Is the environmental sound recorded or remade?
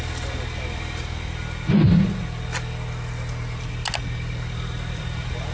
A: recorded